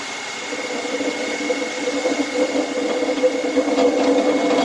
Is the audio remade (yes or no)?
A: no